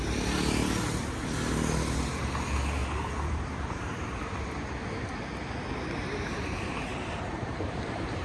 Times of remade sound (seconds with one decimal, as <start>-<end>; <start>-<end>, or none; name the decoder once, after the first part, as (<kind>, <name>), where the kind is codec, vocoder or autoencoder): 2.8-4.2 (vocoder, BigVGAN v2); 6.9-8.2